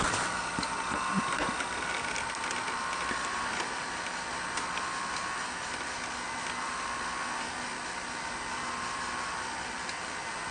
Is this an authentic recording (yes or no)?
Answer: yes